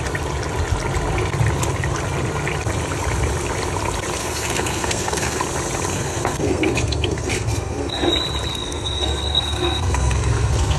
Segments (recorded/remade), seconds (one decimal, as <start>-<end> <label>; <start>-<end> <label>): 0.0-4.2 recorded; 4.2-5.4 remade; 5.4-5.9 recorded; 5.9-8.1 remade; 8.1-8.5 recorded; 8.5-10.8 remade